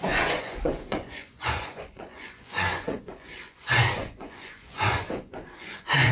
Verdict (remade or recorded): remade